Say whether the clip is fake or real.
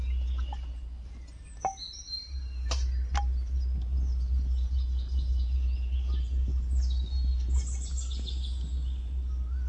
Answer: real